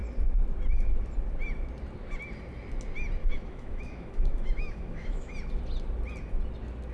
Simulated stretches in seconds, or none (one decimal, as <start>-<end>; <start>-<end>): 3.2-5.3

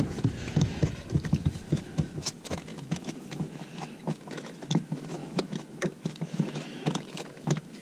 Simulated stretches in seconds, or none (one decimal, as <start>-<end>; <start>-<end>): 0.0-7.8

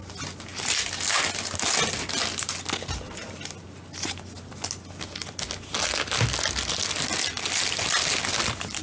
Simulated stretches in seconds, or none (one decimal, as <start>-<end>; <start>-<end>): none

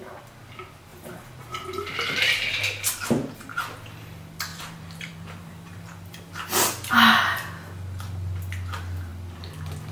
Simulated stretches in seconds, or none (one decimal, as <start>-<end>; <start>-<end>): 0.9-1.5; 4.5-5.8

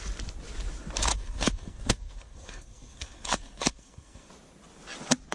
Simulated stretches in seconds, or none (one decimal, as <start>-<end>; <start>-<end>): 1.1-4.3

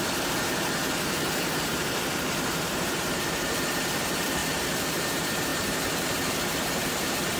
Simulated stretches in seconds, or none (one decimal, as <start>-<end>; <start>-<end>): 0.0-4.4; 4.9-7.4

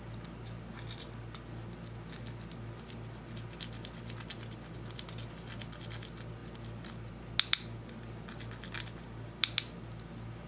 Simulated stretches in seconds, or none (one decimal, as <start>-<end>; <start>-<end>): none